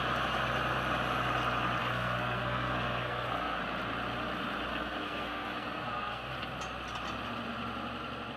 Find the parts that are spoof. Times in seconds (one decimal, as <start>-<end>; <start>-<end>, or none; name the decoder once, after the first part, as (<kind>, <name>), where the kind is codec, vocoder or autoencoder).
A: 1.8-3.6 (codec, SNAC); 4.7-6.3